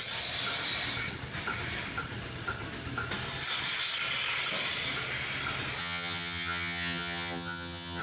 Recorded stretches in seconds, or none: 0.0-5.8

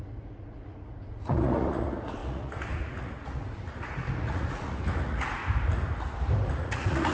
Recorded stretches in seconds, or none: 5.4-6.6

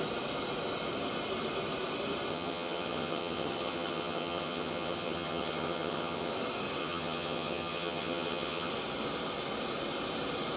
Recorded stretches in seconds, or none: 0.0-2.3; 6.3-6.8; 8.7-10.6

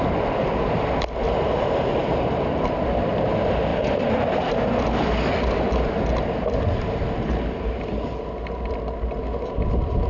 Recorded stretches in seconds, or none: 0.0-2.0; 2.6-3.7; 4.5-10.1

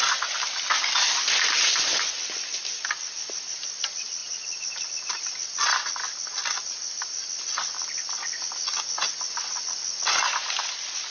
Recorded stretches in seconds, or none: 0.0-11.1